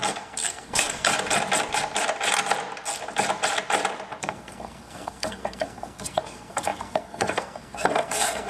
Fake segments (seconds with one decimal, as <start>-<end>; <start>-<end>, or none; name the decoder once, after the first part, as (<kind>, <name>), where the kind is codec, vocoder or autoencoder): 0.0-1.1 (codec, SNAC); 4.2-8.5